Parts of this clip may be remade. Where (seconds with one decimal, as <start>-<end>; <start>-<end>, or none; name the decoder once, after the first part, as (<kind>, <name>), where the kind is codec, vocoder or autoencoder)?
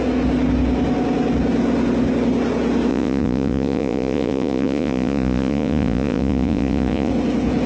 2.9-7.1 (vocoder, Vocos)